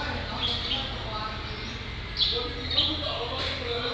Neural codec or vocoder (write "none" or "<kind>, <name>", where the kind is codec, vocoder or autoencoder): none